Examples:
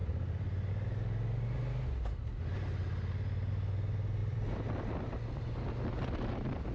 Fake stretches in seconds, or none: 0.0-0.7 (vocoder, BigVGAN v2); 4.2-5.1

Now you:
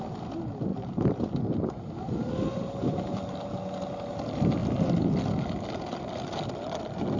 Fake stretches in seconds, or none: 0.7-1.3 (vocoder, BigVGAN v2); 2.5-3.2

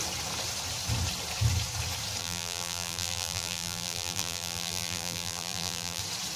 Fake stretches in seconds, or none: 2.2-6.0 (vocoder, BigVGAN v2)

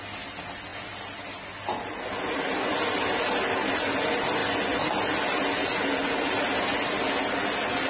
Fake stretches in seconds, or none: none

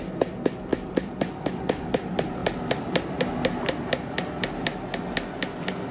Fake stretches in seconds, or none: 0.0-2.4 (vocoder, BigVGAN v2)

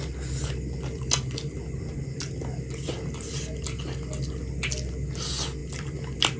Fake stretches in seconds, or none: none